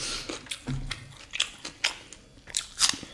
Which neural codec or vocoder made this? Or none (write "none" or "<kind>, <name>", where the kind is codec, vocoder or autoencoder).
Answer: none